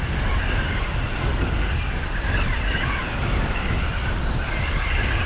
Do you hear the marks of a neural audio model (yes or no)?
no